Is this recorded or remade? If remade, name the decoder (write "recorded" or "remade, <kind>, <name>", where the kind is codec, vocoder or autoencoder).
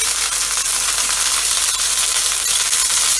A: recorded